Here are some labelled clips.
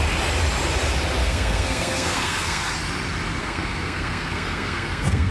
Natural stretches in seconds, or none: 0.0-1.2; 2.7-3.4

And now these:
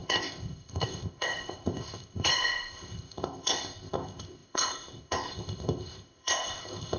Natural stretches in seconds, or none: none

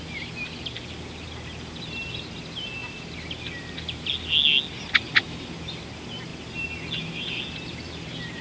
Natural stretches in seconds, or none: 0.0-8.4

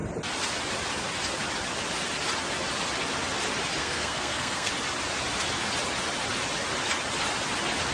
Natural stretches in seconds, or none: 0.0-3.8; 4.7-7.9

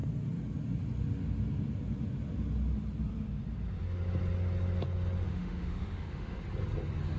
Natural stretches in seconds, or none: 0.0-5.3; 6.4-7.2

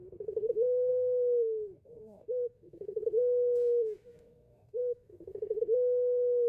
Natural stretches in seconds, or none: none

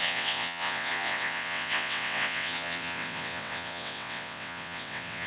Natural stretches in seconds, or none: none

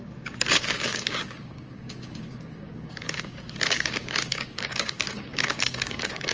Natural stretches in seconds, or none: none